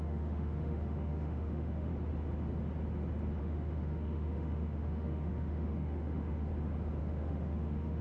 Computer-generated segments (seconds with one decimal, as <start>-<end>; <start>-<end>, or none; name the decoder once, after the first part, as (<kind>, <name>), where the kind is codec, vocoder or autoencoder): 0.0-1.9 (autoencoder, DAC-VAE); 3.4-6.5; 7.0-8.0